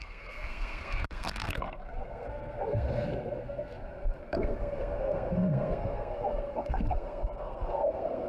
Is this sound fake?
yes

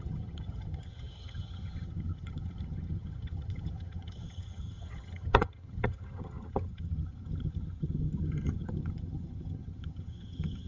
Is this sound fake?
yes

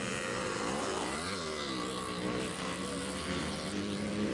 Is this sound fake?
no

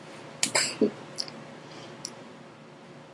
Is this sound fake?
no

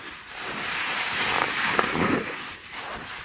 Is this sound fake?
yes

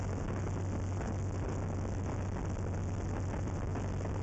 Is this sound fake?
no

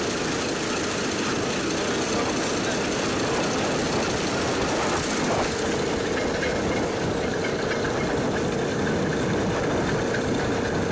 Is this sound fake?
no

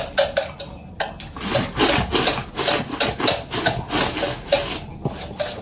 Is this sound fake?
no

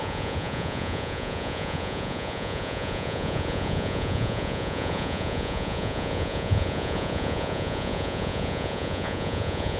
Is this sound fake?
yes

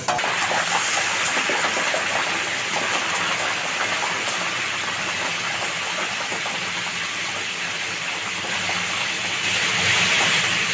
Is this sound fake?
no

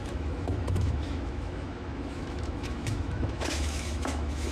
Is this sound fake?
yes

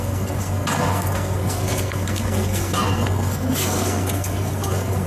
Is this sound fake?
yes